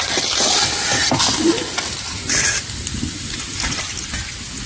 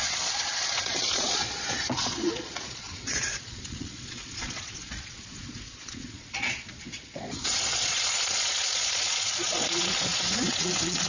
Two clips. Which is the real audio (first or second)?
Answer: first